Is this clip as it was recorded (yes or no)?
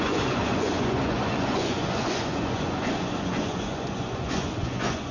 no